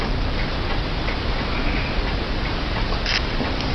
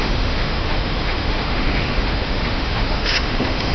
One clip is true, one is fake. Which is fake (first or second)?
second